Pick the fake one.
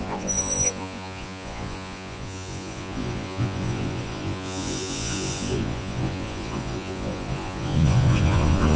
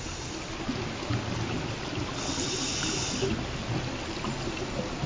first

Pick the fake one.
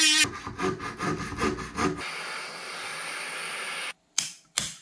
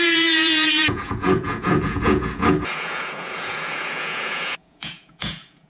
second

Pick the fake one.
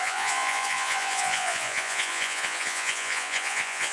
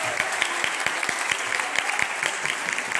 first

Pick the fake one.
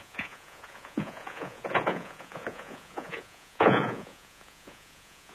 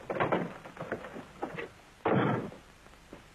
first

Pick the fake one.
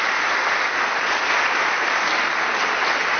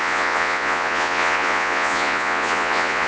second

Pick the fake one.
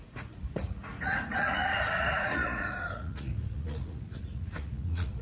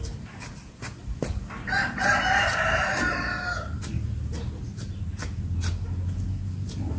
first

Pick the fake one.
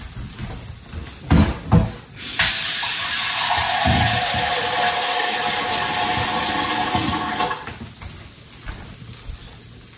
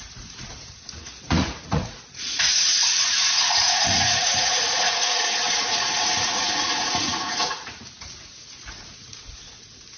second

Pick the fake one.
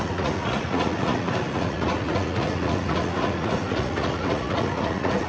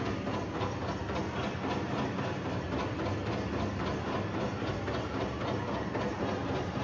first